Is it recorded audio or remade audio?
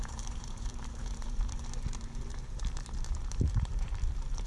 remade